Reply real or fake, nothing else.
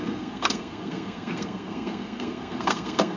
fake